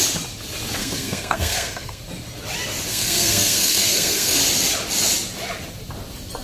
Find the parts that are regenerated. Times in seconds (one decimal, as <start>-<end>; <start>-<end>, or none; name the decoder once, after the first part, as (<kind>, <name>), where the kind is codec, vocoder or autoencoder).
0.8-2.0 (codec, SNAC); 2.9-4.4